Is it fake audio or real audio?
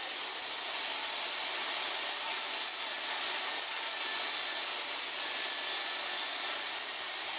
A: real